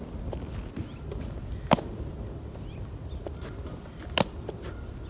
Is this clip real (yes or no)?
yes